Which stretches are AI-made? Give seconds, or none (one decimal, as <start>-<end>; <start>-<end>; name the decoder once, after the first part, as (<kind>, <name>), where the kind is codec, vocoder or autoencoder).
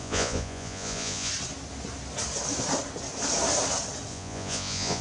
0.0-1.3 (vocoder, Vocos); 4.1-5.0